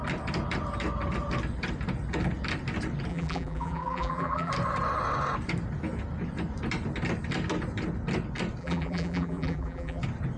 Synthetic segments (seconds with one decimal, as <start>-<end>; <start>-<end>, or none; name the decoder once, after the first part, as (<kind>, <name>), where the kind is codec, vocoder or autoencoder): 3.1-4.5 (vocoder, BigVGAN v2); 8.6-10.0